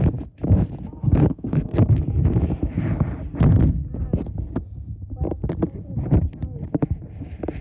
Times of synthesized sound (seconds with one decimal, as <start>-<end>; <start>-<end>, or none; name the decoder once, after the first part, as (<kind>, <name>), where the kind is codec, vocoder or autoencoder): 1.2-1.9 (codec, SNAC)